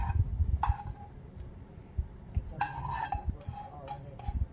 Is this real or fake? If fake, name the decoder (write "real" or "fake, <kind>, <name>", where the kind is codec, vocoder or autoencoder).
real